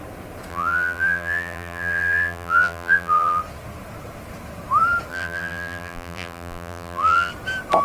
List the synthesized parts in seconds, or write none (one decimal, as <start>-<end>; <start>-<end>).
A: 0.5-3.4; 5.1-7.3

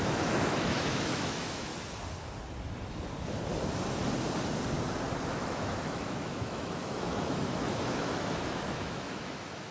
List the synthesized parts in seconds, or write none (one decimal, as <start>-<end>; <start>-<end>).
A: 0.0-1.7; 5.3-9.7

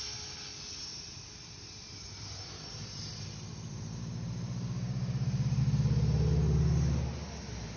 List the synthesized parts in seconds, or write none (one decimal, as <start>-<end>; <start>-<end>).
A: 0.9-5.6

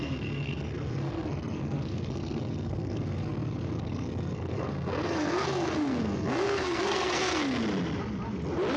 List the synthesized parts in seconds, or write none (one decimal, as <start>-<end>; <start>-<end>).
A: 0.0-7.6

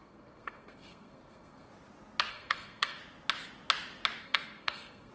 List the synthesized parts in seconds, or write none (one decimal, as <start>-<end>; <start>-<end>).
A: 0.0-1.7; 2.3-3.0; 4.2-5.1

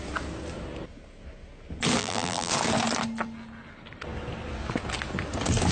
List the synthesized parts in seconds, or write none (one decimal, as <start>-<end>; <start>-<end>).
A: 2.0-2.5